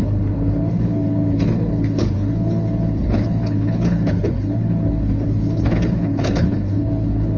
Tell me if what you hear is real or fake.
fake